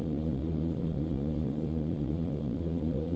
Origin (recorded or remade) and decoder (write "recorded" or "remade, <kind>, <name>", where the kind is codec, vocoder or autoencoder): remade, vocoder, Vocos